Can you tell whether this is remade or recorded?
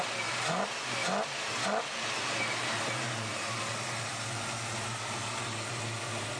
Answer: recorded